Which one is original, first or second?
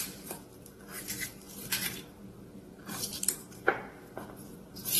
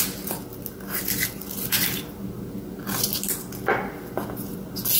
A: second